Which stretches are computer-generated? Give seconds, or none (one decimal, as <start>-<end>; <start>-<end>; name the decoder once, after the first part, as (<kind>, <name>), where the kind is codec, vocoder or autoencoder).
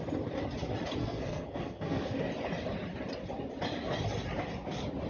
1.0-2.2 (codec, SNAC)